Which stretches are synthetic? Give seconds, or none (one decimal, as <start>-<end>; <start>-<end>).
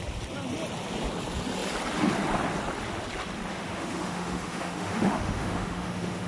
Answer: 3.5-6.3